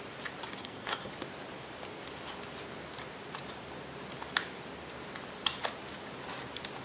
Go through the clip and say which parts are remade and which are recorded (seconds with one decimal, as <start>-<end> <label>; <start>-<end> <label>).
0.0-0.6 recorded; 0.6-1.1 remade; 1.1-6.8 recorded